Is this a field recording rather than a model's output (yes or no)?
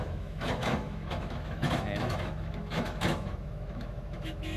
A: no